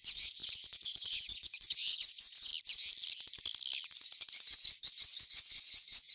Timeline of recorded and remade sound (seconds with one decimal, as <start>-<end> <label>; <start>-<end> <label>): 0.0-2.5 remade; 2.5-5.2 recorded; 5.2-6.1 remade